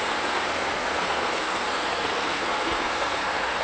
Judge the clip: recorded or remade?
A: remade